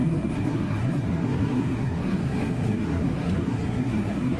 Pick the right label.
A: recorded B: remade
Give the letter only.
B